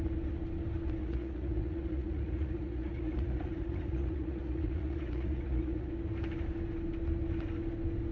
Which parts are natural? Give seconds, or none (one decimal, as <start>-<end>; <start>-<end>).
0.0-1.0; 5.9-8.1